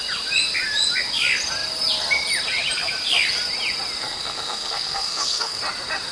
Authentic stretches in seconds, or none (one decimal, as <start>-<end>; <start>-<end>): 0.0-4.0; 5.6-6.1